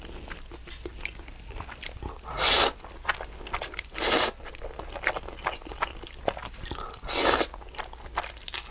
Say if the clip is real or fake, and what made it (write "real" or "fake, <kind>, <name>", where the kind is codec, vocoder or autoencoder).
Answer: real